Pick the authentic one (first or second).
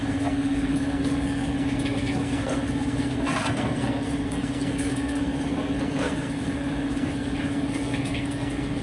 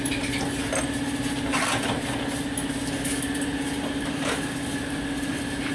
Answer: second